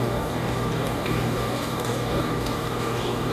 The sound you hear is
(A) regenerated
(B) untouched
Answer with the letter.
A